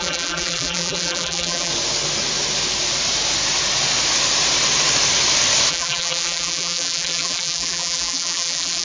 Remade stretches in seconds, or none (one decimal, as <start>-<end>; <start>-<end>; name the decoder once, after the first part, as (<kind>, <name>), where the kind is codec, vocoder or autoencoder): 0.0-1.7 (vocoder, BigVGAN v2); 5.7-8.8